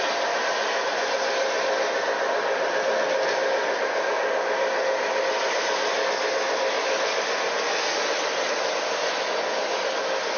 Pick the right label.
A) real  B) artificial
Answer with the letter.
A